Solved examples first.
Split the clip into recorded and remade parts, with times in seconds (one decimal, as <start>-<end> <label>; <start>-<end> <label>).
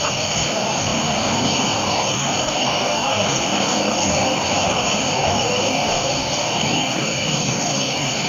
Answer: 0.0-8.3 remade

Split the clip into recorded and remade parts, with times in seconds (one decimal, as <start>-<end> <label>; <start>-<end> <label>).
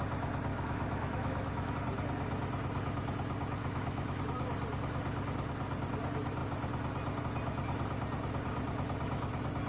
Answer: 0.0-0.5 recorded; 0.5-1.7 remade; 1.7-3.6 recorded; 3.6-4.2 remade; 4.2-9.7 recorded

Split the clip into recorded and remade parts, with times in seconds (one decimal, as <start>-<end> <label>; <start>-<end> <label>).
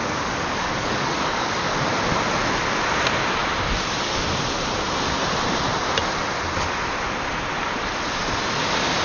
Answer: 0.0-1.7 remade; 1.7-9.0 recorded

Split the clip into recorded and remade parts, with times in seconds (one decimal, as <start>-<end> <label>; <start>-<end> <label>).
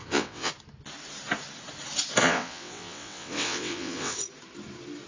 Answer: 0.0-0.5 remade; 0.5-2.2 recorded; 2.2-4.2 remade; 4.2-5.1 recorded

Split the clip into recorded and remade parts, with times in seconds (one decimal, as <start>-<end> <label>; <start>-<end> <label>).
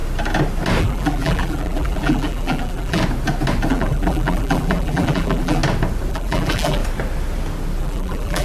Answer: 0.0-0.8 recorded; 0.8-3.0 remade; 3.0-3.7 recorded; 3.7-5.6 remade; 5.6-6.1 recorded; 6.1-6.8 remade; 6.8-7.8 recorded; 7.8-8.4 remade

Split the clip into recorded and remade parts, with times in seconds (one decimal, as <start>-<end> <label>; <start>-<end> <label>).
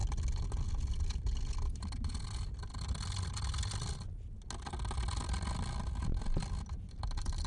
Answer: 0.0-7.5 recorded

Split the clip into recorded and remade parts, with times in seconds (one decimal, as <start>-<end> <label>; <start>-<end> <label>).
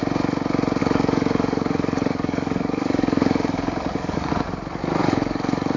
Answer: 0.0-0.8 recorded; 0.8-4.3 remade; 4.3-5.0 recorded; 5.0-5.8 remade